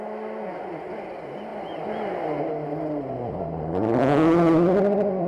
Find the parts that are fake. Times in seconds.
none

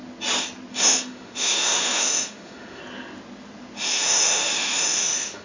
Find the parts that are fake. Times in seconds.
0.7-2.8 (autoencoder, DAC-VAE); 3.8-5.4